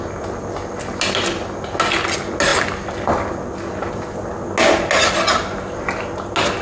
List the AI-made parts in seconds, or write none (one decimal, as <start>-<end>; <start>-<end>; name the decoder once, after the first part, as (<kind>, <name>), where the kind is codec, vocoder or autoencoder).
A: none